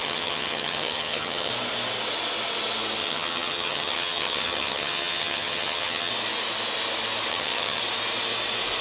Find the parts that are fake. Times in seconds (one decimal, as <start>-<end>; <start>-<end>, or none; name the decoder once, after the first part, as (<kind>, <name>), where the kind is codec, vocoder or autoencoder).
0.0-1.5 (vocoder, HiFi-GAN); 3.0-6.1; 7.3-7.8